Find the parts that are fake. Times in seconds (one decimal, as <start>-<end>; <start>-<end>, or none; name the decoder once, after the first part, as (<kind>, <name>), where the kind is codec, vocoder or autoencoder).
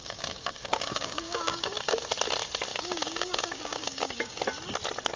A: 0.0-2.0 (codec, DAC); 2.7-4.4